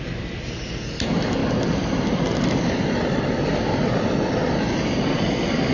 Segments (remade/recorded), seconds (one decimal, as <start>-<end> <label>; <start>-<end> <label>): 0.0-1.4 recorded; 1.4-4.8 remade; 4.8-5.7 recorded